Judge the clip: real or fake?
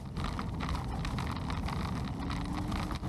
real